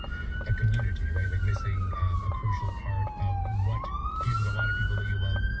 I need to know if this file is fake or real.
real